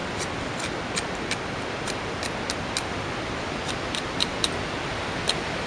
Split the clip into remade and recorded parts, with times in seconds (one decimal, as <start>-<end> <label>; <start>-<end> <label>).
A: 0.0-5.7 recorded